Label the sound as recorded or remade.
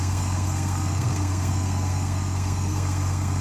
remade